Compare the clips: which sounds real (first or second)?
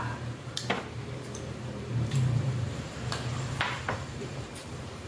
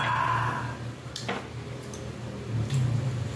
second